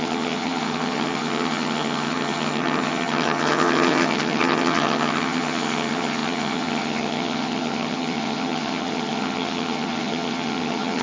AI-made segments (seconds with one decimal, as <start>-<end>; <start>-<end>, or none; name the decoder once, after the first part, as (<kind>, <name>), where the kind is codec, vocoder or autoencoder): 0.0-11.0 (vocoder, HiFi-GAN)